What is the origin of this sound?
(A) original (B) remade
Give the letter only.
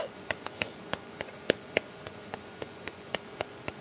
B